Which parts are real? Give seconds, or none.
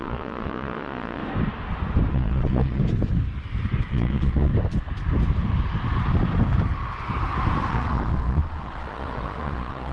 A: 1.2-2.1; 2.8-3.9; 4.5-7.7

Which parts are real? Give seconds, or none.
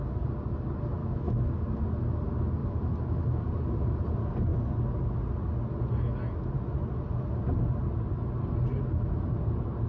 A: 0.0-1.0; 1.5-2.6; 3.5-9.9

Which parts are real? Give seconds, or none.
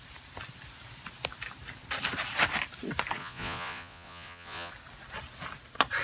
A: 0.0-3.2; 4.7-6.0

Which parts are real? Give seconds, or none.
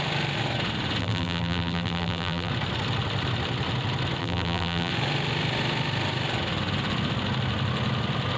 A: 0.0-1.0; 2.5-4.2; 4.9-8.4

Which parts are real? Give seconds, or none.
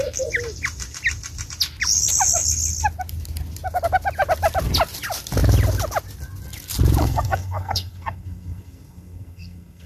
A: 0.0-7.0